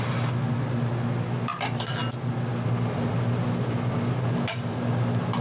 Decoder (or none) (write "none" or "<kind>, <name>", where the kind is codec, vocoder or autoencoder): none